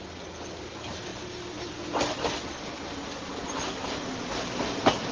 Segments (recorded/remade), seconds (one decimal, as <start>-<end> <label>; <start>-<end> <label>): 0.0-5.1 recorded